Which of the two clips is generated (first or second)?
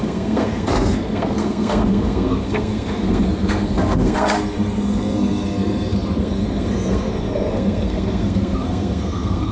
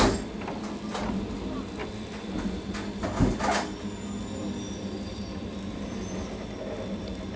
first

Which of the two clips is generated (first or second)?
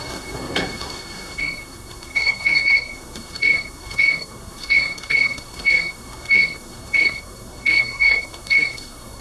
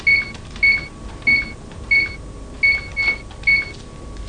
first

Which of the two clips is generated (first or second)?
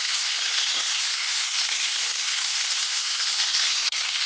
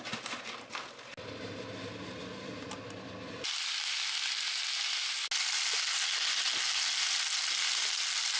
first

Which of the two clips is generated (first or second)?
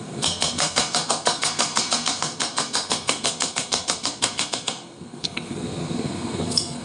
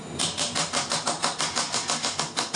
first